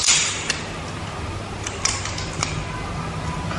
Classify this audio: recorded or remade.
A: recorded